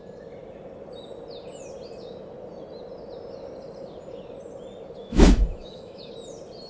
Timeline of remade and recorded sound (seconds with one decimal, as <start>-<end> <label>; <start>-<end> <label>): 0.0-5.0 recorded; 5.0-6.1 remade; 6.1-6.7 recorded